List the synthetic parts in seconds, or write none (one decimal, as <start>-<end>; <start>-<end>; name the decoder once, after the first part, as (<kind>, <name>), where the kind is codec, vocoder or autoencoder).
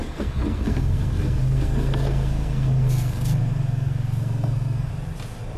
0.0-4.9 (codec, SNAC)